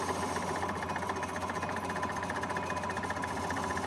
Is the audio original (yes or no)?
yes